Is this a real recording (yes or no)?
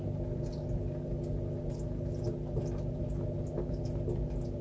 yes